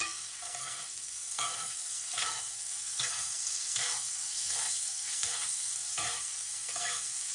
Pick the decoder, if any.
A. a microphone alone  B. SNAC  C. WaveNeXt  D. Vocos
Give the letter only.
B